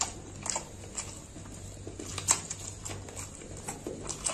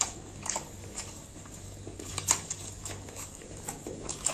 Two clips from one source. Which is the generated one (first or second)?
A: second